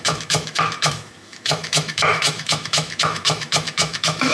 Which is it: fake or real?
fake